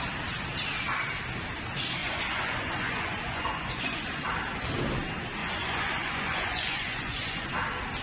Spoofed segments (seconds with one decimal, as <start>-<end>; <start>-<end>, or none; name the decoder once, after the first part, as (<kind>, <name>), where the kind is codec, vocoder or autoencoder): 2.0-4.2 (vocoder, Vocos); 5.4-7.5